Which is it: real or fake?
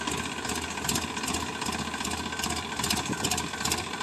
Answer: real